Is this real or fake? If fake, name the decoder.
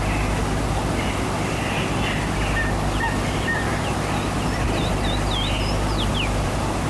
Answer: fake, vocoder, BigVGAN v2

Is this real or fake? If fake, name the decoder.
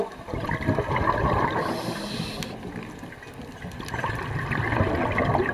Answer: real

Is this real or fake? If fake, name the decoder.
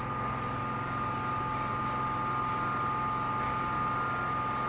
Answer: real